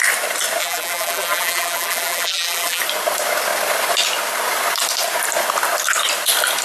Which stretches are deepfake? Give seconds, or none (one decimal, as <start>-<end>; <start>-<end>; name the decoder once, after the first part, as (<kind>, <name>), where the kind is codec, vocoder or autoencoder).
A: 0.6-2.8 (vocoder, BigVGAN v2)